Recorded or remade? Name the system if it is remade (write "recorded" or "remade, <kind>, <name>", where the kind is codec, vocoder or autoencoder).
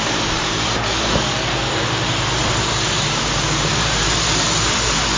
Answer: remade, vocoder, BigVGAN v2